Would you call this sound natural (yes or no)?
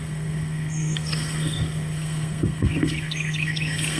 no